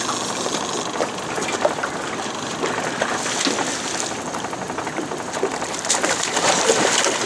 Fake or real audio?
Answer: real